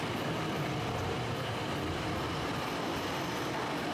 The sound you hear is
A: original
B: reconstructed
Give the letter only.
B